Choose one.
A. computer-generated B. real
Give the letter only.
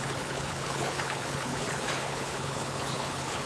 A